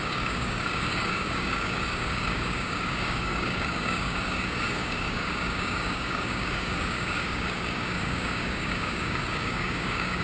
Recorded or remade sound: remade